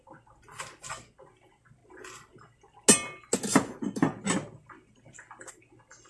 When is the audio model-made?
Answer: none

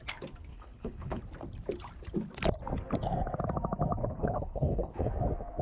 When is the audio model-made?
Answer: 0.5-1.2 (codec, HILCodec); 4.0-5.1

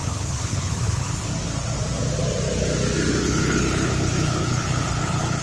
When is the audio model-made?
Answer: 0.0-1.3 (codec, HILCodec); 3.2-5.4

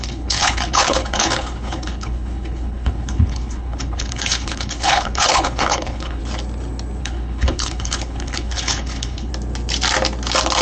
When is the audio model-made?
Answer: 0.0-6.2 (codec, HILCodec); 7.0-9.3

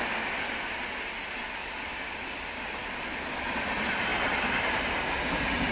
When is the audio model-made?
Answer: none

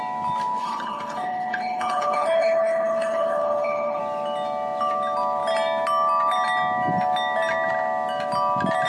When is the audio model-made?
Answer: 0.6-4.0 (codec, HILCodec)

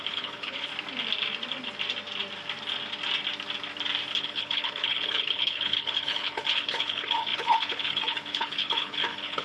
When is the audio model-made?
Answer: 0.0-0.7 (codec, HILCodec); 4.1-9.4